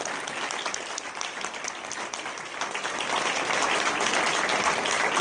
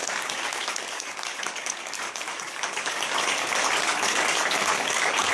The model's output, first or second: second